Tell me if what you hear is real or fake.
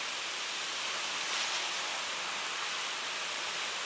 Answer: real